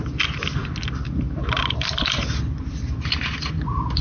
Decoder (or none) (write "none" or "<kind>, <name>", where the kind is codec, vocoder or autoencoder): none